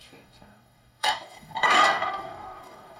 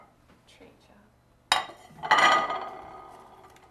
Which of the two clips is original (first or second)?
second